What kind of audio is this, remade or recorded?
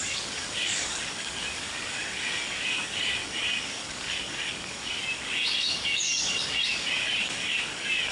remade